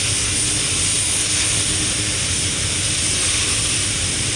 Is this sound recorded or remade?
recorded